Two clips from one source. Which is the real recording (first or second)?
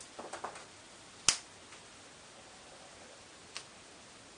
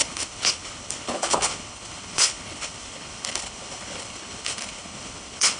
first